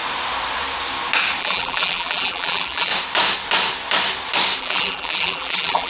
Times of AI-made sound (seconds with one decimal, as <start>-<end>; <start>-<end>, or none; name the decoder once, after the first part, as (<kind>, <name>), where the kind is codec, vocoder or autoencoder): 1.4-2.9 (vocoder, BigVGAN v2); 4.6-5.9